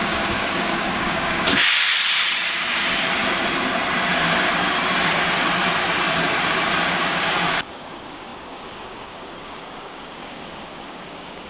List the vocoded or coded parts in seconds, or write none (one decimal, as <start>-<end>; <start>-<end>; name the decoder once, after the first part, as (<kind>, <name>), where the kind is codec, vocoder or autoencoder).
0.0-1.9 (codec, DAC); 6.9-11.5